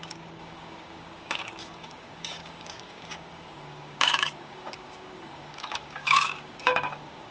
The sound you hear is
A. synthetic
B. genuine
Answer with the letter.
A